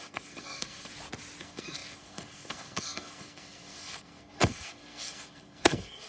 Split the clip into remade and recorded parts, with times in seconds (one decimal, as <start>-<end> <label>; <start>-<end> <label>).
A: 0.0-0.9 remade; 0.9-1.4 recorded; 1.4-6.1 remade